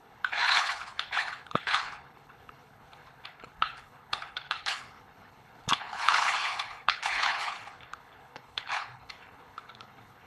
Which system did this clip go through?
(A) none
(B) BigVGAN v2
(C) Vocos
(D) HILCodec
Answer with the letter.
D